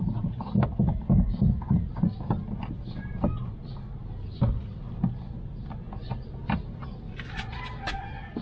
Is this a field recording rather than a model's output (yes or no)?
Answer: yes